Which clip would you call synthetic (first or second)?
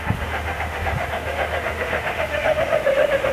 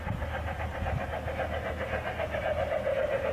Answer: first